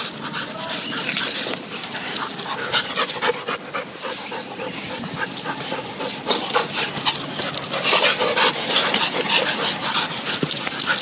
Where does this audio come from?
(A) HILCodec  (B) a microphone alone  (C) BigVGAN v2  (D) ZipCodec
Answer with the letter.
B